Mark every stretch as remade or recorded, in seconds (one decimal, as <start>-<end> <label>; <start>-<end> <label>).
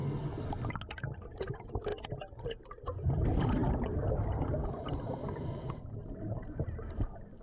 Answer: 0.0-7.4 recorded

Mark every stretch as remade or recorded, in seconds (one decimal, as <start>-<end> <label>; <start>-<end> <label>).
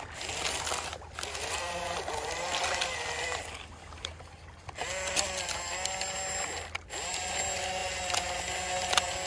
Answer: 0.0-9.3 recorded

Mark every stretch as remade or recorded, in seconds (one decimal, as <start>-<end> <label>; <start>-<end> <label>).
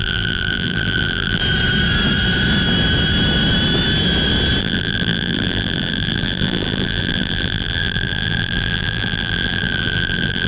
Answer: 0.0-1.4 remade; 1.4-4.6 recorded; 4.6-10.5 remade